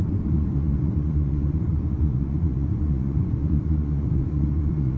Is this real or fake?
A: fake